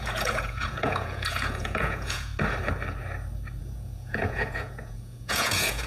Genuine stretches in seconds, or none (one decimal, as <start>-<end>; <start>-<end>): 2.3-3.6